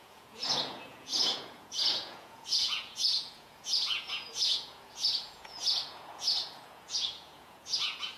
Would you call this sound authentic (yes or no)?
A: no